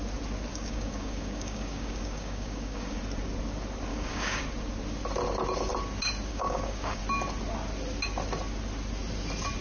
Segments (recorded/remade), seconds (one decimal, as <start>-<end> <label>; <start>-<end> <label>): 0.0-0.5 recorded; 0.5-3.0 remade; 3.0-3.9 recorded; 3.9-4.4 remade; 4.4-6.3 recorded; 6.3-7.0 remade; 7.0-9.6 recorded